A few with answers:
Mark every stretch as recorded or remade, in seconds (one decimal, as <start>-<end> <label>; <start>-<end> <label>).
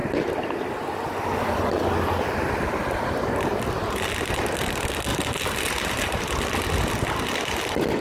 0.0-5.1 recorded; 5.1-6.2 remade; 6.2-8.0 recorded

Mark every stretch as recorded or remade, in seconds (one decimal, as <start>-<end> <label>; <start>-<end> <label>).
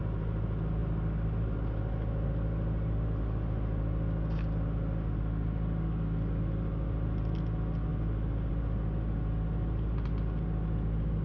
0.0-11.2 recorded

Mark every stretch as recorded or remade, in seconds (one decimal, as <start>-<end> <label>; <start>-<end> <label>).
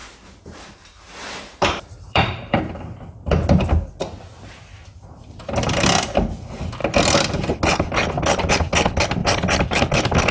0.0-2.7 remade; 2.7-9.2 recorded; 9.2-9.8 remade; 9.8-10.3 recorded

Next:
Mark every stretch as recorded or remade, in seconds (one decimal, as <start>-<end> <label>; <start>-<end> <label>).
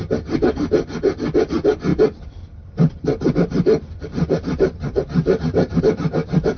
0.0-1.9 recorded; 1.9-5.8 remade; 5.8-6.6 recorded